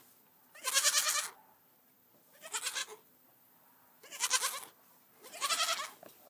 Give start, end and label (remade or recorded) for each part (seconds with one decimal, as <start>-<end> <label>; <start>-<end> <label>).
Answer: 0.0-6.3 recorded